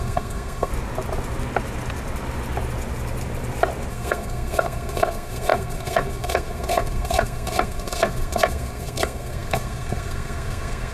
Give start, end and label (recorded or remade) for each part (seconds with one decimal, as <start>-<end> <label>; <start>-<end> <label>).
0.0-0.7 remade; 0.7-3.9 recorded; 3.9-10.9 remade